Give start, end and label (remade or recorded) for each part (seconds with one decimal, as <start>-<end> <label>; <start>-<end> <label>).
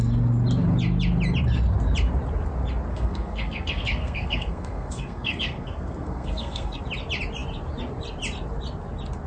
0.0-2.9 recorded; 2.9-6.8 remade; 6.8-9.3 recorded